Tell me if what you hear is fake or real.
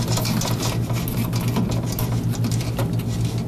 real